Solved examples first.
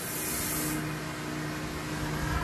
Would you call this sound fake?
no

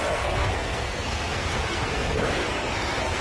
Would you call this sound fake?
yes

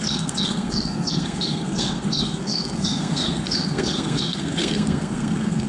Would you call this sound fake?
yes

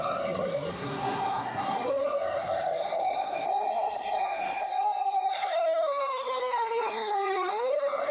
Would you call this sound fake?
yes